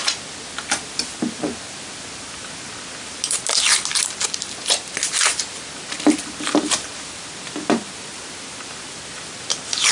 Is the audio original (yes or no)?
yes